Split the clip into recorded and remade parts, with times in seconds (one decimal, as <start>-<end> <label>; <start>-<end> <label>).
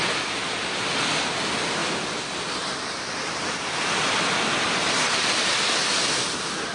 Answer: 0.0-0.4 remade; 0.4-1.4 recorded; 1.4-1.8 remade; 1.8-2.7 recorded; 2.7-6.7 remade